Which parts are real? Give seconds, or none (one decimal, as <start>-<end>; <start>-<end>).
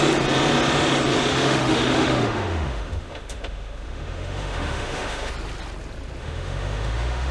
0.0-1.3; 5.3-6.2